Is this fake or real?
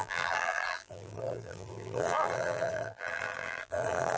fake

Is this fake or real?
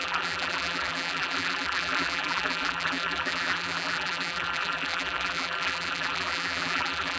fake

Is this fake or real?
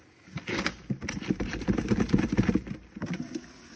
real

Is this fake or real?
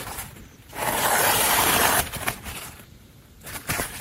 fake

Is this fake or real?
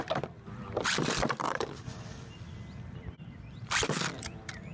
fake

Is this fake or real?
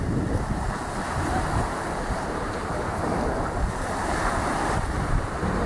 fake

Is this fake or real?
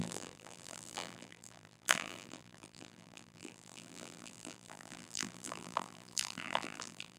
fake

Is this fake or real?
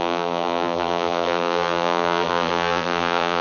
fake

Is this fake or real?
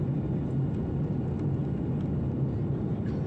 real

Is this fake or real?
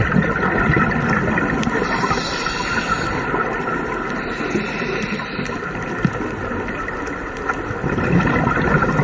real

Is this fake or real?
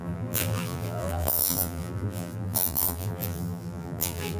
fake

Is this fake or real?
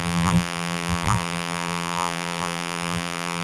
fake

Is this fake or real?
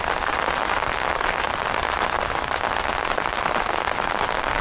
real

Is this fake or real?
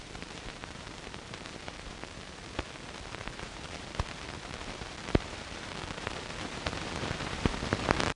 fake